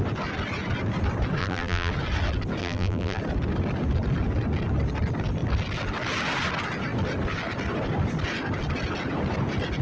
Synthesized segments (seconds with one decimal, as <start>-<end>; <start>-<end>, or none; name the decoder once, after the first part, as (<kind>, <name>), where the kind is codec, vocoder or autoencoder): 1.4-1.9 (vocoder, BigVGAN v2); 2.6-3.2